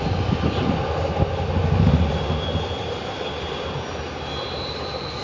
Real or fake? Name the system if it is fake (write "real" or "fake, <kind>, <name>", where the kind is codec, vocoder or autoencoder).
real